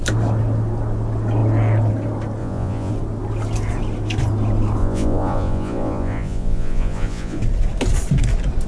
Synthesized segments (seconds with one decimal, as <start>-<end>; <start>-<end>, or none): 2.4-2.9; 4.8-7.4